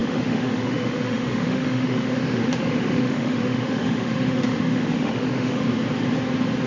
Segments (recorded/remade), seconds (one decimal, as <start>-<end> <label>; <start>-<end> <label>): 0.0-5.6 remade; 5.6-6.7 recorded